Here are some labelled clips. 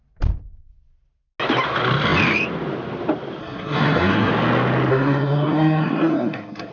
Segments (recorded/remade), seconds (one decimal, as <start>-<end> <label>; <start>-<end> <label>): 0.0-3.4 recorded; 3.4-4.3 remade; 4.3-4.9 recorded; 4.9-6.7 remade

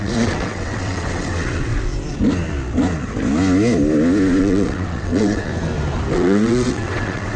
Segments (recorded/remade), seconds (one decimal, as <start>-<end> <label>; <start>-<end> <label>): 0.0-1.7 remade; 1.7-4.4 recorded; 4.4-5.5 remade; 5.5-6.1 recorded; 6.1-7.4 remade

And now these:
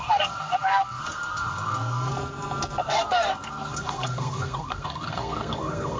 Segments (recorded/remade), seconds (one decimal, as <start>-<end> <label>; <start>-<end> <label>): 0.0-2.1 remade; 2.1-2.8 recorded; 2.8-6.0 remade

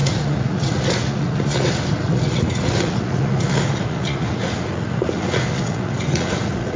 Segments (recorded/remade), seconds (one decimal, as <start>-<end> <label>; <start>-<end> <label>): 0.0-6.8 remade

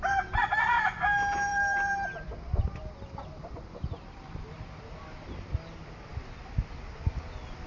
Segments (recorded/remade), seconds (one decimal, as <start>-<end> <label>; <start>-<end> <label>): 0.0-1.5 recorded; 1.5-4.9 remade; 4.9-7.7 recorded

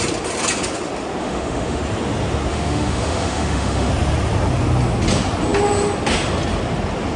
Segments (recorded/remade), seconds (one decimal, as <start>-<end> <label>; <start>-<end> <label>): 0.0-1.2 recorded; 1.2-1.8 remade; 1.8-2.5 recorded; 2.5-3.9 remade; 3.9-7.2 recorded